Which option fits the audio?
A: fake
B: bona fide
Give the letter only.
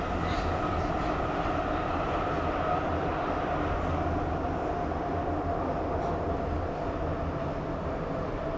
B